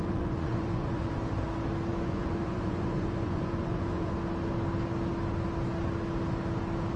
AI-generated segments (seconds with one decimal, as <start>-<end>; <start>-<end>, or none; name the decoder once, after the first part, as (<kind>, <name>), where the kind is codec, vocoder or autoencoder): 0.0-1.1 (vocoder, Vocos); 1.9-4.1